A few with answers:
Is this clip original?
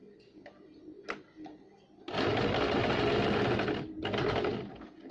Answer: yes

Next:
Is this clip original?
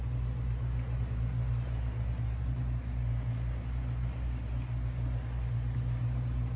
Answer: yes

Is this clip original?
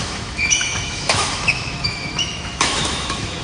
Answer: no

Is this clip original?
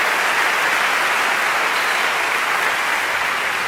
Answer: yes